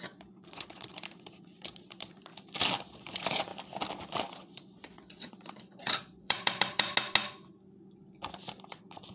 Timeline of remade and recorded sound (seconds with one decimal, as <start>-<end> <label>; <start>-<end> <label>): 0.0-2.3 remade; 2.3-2.8 recorded; 2.8-3.5 remade; 3.5-4.2 recorded; 4.2-6.9 remade; 6.9-8.7 recorded; 8.7-9.1 remade